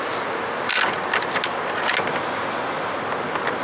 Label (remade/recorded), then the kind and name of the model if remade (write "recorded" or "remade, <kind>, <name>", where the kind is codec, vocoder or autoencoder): recorded